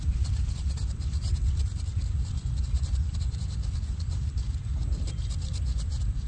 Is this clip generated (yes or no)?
yes